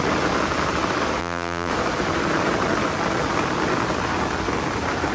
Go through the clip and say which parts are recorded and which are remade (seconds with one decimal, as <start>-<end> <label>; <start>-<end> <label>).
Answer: 0.0-1.2 recorded; 1.2-1.7 remade; 1.7-5.1 recorded